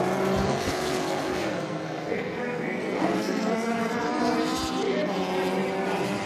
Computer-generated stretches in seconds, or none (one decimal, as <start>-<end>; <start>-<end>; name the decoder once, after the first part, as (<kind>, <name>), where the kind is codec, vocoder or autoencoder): 0.4-4.2 (codec, SNAC)